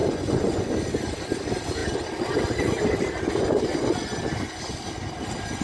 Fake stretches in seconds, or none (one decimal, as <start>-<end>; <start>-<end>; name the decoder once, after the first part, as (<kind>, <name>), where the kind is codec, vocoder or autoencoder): 0.0-0.7 (vocoder, Vocos)